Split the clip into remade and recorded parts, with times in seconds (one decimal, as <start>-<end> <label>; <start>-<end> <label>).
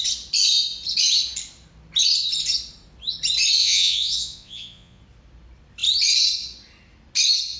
0.0-3.6 recorded; 3.6-5.0 remade; 5.0-7.6 recorded